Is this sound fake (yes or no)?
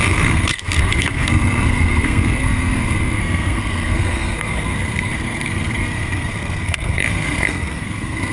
yes